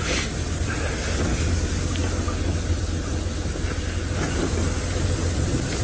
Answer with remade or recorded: recorded